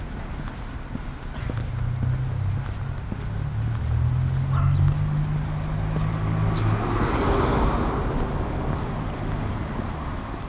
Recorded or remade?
recorded